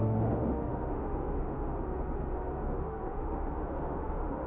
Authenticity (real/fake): fake